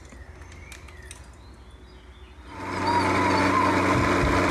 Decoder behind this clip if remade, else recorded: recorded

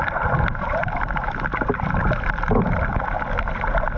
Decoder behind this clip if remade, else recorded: remade, vocoder, BigVGAN v2